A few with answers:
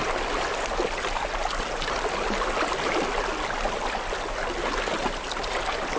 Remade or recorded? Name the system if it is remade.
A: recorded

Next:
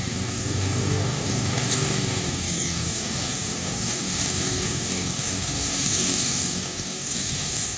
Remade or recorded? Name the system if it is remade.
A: remade, codec, DAC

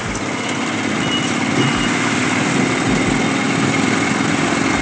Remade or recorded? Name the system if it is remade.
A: recorded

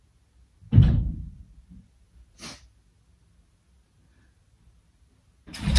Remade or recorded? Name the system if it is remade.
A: recorded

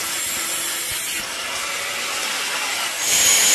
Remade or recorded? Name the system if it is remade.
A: recorded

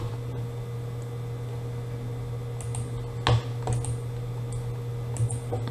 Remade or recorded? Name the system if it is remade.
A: recorded